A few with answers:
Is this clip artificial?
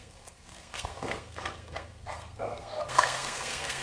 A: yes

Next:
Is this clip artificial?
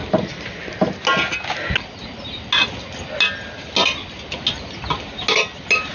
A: no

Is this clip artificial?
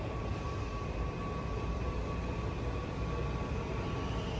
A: no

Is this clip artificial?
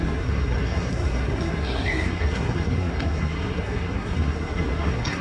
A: yes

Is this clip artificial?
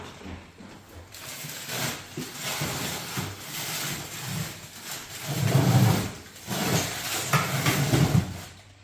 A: no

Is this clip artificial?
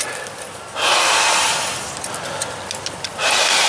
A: no